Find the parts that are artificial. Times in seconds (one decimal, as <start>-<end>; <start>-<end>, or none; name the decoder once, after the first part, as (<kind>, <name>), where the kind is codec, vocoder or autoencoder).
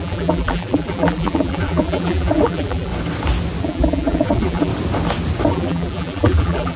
0.0-2.9 (vocoder, BigVGAN v2); 3.6-4.7; 5.5-6.8